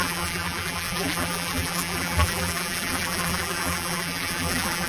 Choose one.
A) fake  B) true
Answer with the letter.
A